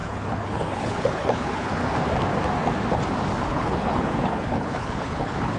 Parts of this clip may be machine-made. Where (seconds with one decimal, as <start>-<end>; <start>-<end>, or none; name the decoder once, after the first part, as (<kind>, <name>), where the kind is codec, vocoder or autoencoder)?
0.0-1.8 (codec, HILCodec); 3.5-5.6